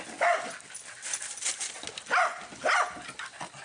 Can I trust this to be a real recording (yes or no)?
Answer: yes